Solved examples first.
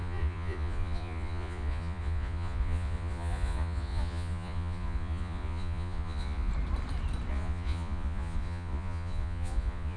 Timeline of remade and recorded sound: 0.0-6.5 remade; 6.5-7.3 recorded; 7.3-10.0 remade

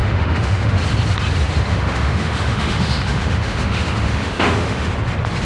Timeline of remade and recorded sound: 0.0-0.7 remade; 0.7-1.7 recorded; 1.7-4.9 remade; 4.9-5.4 recorded